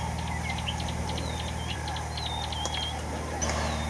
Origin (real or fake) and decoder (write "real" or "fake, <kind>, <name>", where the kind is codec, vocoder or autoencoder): real